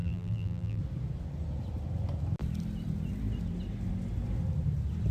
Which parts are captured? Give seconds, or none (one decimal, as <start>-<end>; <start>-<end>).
0.8-5.1